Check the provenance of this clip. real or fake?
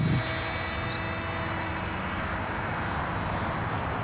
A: real